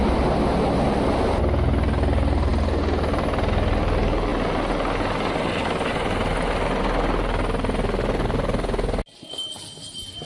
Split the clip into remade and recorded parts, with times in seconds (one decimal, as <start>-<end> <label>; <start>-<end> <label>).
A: 0.0-10.2 recorded